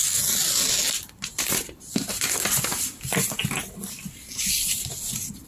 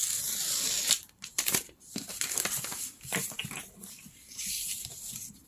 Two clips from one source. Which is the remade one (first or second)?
second